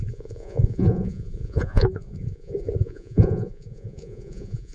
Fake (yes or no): yes